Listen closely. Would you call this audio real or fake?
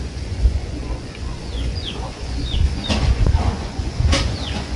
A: fake